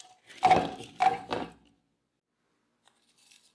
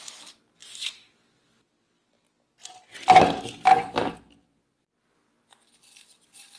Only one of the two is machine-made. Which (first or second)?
first